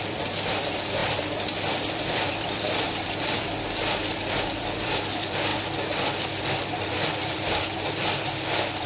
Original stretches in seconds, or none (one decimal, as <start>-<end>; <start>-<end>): none